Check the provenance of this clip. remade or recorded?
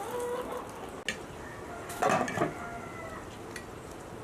recorded